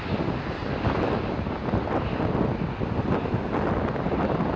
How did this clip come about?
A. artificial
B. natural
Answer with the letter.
B